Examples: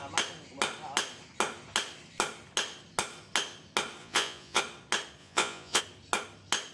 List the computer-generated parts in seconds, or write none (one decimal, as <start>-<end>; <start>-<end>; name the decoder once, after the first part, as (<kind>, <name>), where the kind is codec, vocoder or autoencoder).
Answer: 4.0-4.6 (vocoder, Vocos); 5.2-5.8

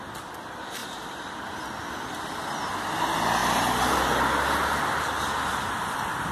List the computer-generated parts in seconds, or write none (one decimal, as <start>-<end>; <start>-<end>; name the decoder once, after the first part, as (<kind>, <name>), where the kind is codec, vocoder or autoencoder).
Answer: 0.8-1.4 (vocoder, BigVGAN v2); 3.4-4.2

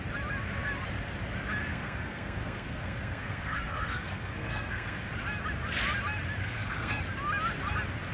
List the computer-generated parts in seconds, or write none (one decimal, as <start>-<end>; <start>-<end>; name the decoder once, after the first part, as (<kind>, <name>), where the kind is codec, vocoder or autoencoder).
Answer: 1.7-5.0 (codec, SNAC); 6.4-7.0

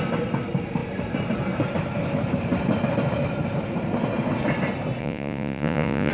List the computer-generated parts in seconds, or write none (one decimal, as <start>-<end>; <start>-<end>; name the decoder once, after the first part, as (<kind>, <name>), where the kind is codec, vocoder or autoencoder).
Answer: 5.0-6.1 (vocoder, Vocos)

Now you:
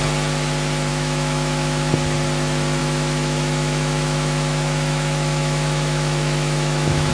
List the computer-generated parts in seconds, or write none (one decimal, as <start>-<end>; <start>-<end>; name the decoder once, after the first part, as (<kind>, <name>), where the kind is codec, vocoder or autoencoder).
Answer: 0.9-1.9 (autoencoder, DAC-VAE); 2.8-7.1